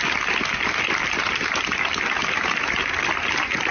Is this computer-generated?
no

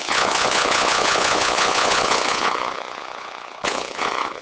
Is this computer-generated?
yes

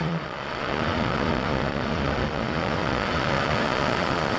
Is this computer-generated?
yes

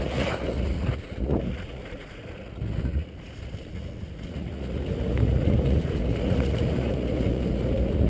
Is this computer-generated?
yes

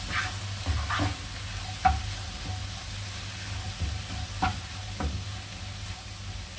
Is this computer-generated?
no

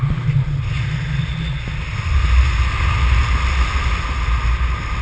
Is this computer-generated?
no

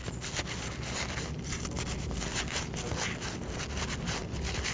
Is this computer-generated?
no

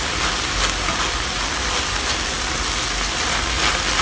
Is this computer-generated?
no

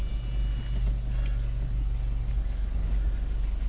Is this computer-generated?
no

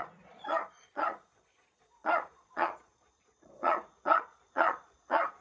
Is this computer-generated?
yes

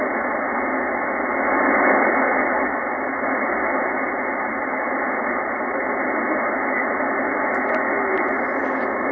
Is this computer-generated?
no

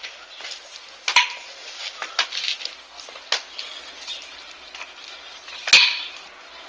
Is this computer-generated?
no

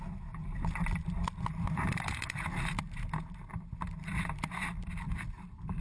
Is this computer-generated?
no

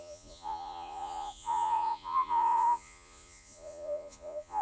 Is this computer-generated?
yes